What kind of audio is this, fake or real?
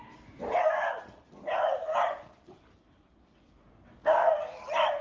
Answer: real